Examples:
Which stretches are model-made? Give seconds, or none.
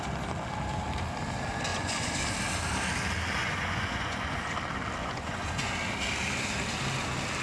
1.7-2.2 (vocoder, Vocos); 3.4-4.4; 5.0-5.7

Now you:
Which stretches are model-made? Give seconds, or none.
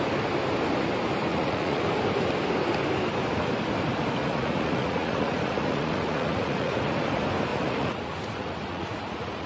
1.3-1.8 (vocoder, Vocos); 4.2-7.0; 7.5-9.5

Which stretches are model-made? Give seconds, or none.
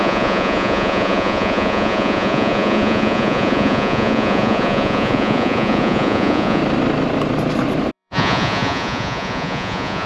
0.0-6.6 (vocoder, Vocos); 7.9-10.1